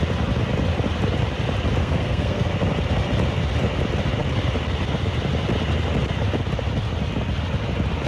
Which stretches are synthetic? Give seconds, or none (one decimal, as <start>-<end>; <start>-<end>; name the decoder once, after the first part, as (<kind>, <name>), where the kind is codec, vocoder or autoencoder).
1.8-2.5 (codec, SNAC)